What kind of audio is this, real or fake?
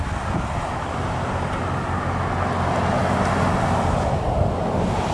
real